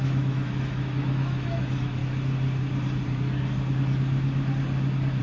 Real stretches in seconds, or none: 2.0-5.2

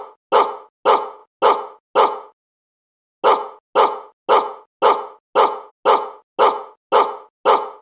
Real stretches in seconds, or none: 0.0-7.8

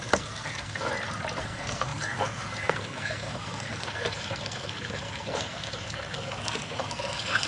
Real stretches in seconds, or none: 0.9-1.4

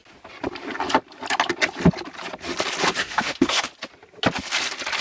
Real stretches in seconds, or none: 0.0-3.0; 3.7-5.0

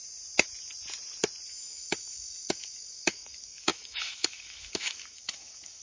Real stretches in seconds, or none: 0.0-1.5

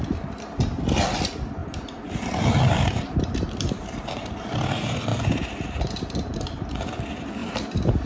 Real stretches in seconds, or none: 0.0-1.6; 4.3-5.1; 6.7-7.4

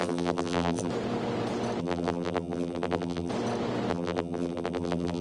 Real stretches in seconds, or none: 0.9-1.8; 3.3-3.9